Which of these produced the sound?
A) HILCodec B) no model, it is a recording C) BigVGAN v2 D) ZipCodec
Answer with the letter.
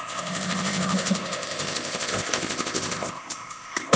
D